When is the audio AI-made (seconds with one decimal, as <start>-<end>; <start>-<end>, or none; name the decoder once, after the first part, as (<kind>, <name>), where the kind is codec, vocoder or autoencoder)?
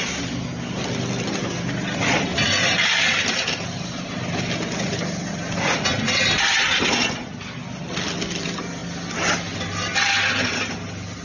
2.3-4.4 (vocoder, BigVGAN v2)